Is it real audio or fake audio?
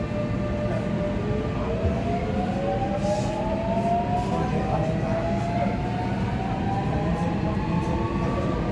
real